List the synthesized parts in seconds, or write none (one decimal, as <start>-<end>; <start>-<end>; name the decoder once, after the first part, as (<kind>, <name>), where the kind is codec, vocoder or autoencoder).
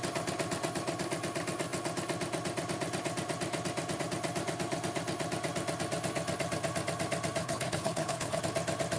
7.4-8.4 (codec, HILCodec)